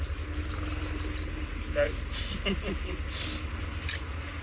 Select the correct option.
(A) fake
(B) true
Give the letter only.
B